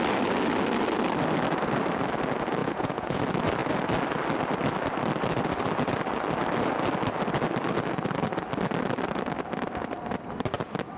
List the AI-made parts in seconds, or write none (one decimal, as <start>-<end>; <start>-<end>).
2.6-3.2